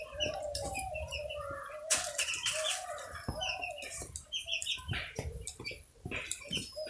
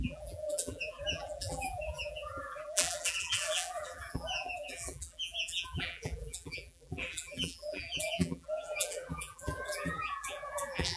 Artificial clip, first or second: second